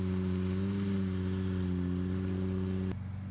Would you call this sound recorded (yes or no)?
yes